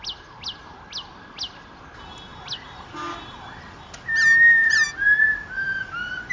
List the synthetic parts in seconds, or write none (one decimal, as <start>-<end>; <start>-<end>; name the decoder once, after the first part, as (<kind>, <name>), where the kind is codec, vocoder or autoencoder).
none